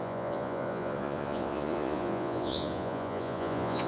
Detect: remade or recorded remade